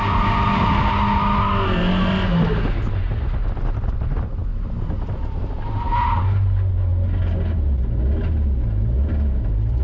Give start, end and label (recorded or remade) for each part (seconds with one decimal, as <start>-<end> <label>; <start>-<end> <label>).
0.0-9.8 recorded